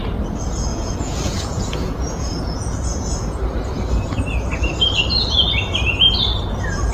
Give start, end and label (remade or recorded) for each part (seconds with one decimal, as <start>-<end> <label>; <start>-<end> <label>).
0.0-0.7 recorded; 0.7-3.4 remade; 3.4-6.9 recorded